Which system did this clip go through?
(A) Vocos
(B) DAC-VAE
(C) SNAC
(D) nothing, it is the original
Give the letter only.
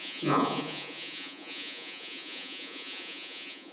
A